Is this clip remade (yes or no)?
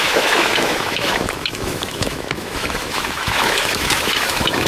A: yes